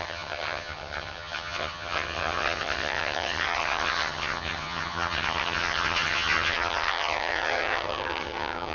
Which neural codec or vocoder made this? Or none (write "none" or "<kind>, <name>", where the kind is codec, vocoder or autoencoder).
vocoder, HiFi-GAN